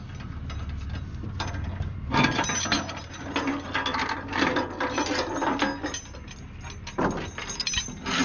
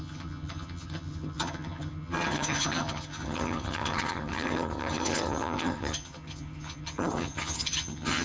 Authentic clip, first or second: first